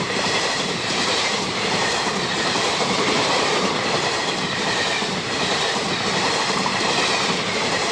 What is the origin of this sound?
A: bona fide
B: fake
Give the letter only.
B